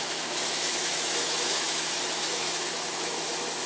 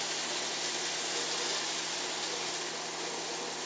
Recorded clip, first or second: second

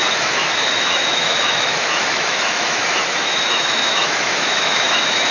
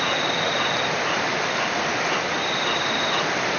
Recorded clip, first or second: second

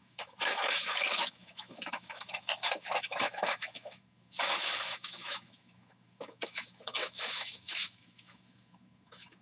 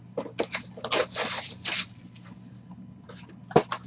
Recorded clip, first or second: second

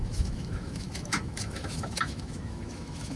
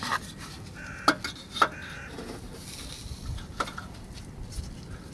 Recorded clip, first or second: second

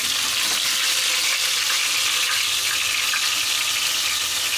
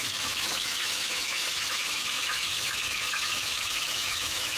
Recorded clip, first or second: first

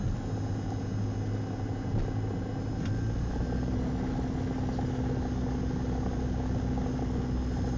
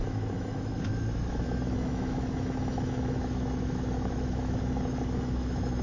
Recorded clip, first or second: first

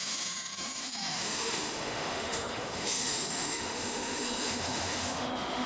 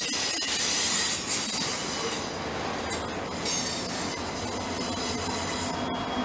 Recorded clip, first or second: second